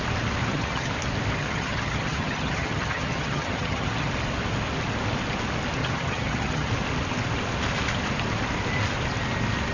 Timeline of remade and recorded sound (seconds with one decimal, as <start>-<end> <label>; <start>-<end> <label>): 0.0-0.4 recorded; 0.4-0.9 remade; 0.9-1.4 recorded; 1.4-4.1 remade; 4.1-5.8 recorded; 5.8-6.7 remade; 6.7-9.7 recorded